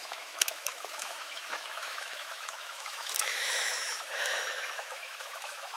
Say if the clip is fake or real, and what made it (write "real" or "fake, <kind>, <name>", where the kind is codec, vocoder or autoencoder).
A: fake, autoencoder, DAC-VAE